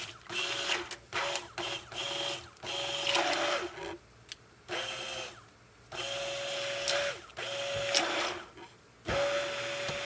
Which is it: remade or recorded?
recorded